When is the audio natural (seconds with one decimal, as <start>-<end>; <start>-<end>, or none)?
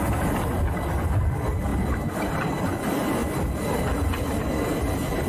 0.0-1.7; 2.6-5.3